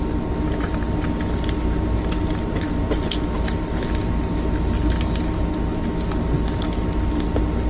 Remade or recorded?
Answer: recorded